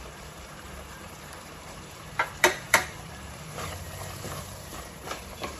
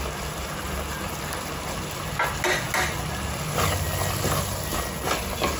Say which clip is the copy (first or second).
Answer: first